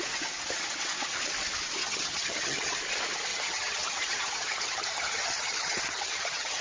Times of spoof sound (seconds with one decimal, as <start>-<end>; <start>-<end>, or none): 1.8-2.7; 3.3-6.6